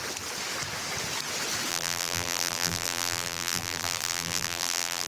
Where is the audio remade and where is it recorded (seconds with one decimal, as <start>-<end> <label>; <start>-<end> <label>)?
0.0-1.7 recorded; 1.7-5.1 remade